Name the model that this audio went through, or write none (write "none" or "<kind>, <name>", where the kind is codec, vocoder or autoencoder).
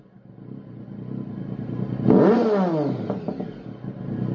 none